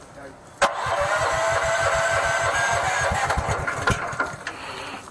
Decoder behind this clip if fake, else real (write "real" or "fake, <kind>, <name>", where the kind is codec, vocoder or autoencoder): real